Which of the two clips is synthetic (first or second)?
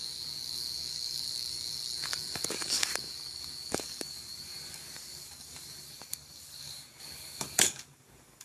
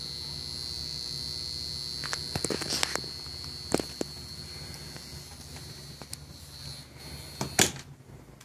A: first